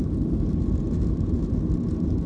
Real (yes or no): yes